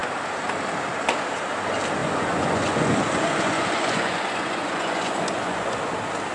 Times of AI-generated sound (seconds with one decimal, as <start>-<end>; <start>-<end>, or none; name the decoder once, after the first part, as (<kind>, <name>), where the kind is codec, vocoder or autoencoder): 2.0-5.8 (vocoder, Vocos)